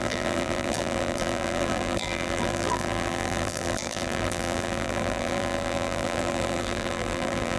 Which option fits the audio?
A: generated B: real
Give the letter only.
A